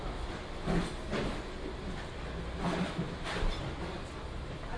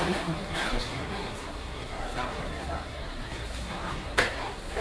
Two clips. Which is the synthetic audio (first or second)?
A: second